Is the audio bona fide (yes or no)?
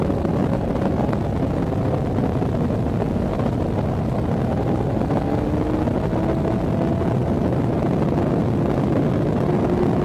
yes